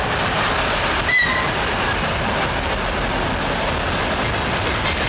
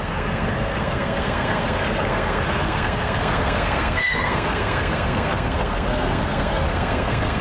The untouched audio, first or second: first